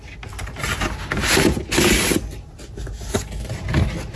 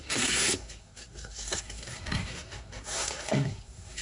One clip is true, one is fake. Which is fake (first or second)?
second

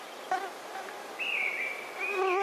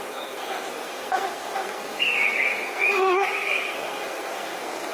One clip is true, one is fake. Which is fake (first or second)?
second